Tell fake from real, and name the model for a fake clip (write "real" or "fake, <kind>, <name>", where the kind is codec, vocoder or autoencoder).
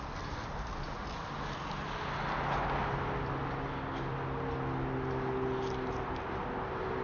real